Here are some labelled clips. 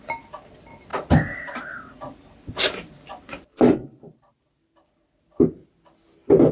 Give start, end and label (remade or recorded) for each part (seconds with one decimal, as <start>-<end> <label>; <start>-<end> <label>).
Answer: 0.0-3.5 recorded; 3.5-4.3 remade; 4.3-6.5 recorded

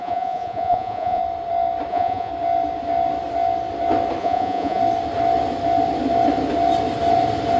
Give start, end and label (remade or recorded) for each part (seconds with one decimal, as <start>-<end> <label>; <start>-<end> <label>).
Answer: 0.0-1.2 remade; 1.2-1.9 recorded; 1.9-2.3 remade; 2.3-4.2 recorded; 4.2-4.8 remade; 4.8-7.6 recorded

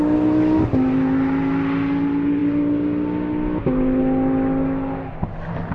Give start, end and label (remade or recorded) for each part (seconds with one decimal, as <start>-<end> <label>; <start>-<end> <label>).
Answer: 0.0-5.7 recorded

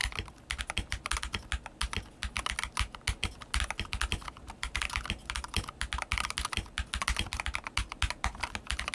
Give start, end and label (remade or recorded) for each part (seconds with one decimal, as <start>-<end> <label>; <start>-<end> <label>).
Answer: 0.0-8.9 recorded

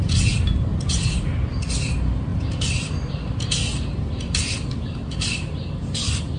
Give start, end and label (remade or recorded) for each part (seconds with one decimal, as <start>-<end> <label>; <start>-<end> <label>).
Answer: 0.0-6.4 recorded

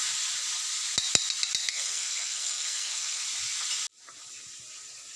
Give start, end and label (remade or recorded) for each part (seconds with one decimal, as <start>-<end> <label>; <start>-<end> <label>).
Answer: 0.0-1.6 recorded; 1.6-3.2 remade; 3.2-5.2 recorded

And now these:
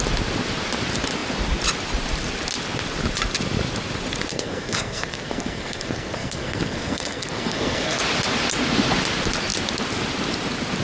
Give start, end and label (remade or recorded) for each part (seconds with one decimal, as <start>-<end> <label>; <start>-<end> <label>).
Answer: 0.0-4.3 recorded; 4.3-8.0 remade; 8.0-10.8 recorded

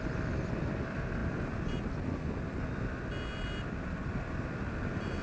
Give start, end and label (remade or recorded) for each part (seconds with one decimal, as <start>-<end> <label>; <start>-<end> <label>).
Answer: 0.0-1.2 recorded; 1.2-1.9 remade; 1.9-5.2 recorded